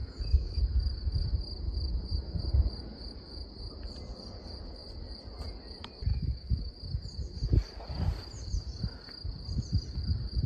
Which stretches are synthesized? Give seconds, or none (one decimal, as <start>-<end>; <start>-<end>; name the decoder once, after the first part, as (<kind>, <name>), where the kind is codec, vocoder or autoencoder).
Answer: 0.0-0.6 (autoencoder, DAC-VAE); 6.1-6.7